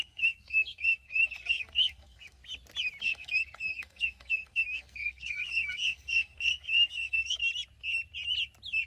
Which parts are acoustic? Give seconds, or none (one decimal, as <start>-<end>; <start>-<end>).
2.4-3.0; 7.4-8.9